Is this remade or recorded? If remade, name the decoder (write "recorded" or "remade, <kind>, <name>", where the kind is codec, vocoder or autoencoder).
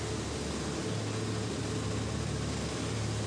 recorded